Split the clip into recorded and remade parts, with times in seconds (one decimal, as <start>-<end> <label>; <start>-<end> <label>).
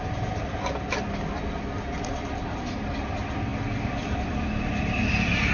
0.0-5.5 recorded